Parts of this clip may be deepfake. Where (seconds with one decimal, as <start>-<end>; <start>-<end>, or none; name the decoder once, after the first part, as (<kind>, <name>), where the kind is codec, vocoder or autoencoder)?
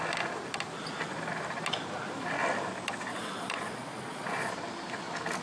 3.1-4.5 (vocoder, Vocos)